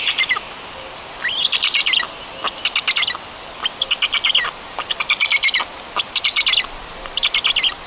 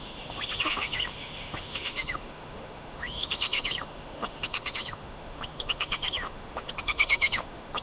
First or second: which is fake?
second